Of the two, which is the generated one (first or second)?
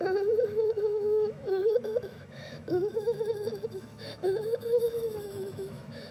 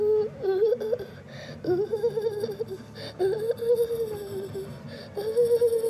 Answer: first